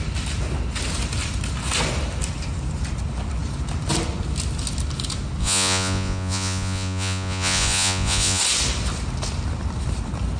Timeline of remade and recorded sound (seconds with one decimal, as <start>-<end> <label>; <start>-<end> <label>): 0.0-5.4 recorded; 5.4-8.4 remade; 8.4-10.4 recorded